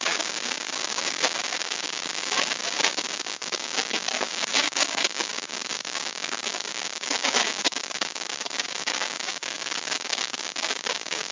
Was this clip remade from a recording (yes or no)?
yes